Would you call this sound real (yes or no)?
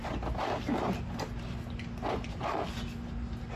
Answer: yes